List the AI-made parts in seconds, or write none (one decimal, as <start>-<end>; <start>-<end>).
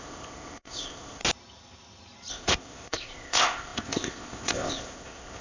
0.0-1.2; 2.3-5.4